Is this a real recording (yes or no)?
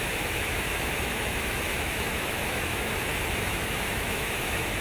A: no